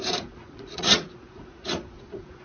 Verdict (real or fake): fake